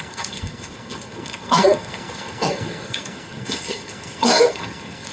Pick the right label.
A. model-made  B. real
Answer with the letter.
A